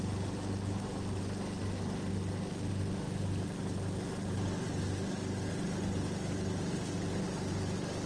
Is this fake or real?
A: real